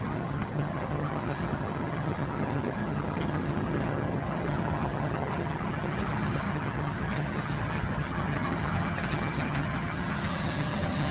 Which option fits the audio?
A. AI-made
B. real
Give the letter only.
A